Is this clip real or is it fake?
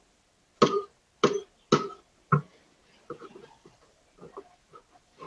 real